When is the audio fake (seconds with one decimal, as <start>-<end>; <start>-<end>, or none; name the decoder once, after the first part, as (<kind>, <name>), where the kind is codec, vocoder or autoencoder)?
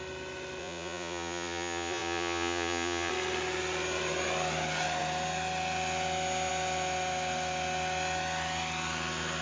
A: 0.6-3.1 (vocoder, Vocos)